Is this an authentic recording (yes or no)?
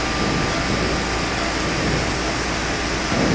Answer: yes